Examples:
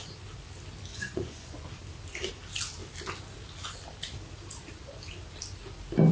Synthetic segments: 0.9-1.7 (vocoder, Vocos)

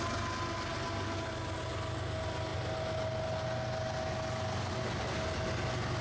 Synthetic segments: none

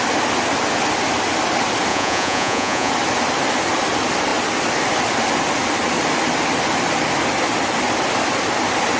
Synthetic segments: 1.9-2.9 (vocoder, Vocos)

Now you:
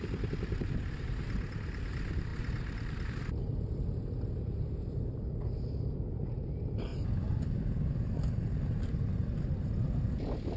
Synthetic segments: none